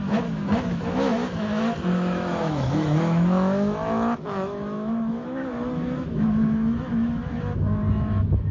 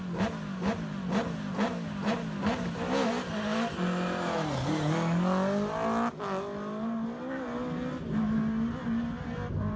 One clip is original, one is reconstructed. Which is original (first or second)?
second